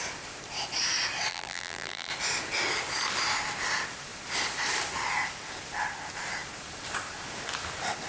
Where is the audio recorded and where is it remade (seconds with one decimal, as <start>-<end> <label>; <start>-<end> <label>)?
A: 0.0-1.3 recorded; 1.3-2.1 remade; 2.1-8.1 recorded